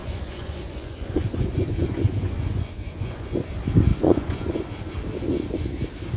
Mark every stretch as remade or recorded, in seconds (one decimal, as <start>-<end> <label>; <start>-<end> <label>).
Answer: 0.0-3.5 remade; 3.5-3.9 recorded; 3.9-4.7 remade; 4.7-6.2 recorded